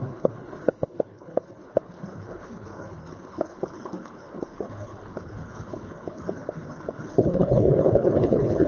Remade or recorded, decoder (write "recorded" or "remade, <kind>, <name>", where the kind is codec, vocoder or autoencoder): remade, codec, HILCodec